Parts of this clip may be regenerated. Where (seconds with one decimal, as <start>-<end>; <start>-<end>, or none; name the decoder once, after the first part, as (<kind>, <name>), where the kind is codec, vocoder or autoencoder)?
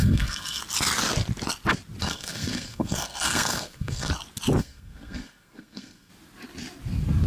0.0-0.6 (codec, SNAC); 2.0-4.1; 4.6-6.1